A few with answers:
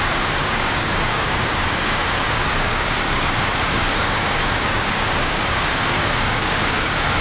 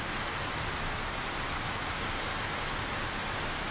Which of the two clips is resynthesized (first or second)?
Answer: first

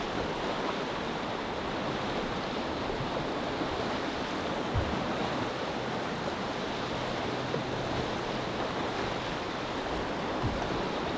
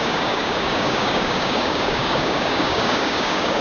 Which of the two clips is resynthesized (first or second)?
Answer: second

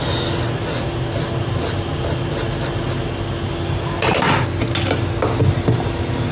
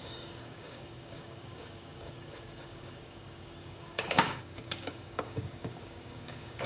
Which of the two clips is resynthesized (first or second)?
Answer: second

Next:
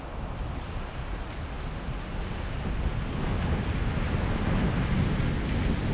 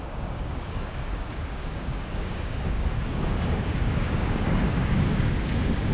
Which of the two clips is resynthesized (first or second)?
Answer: second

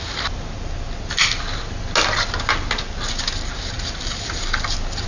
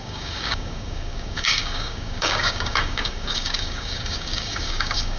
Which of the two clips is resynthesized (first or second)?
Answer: second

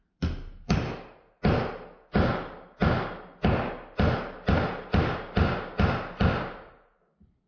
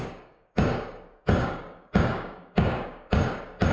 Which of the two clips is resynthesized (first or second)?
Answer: second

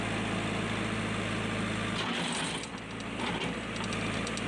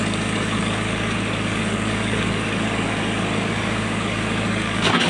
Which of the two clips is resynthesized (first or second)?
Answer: second